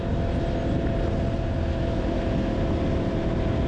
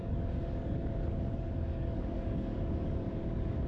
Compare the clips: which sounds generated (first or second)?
second